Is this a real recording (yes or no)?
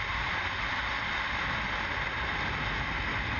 yes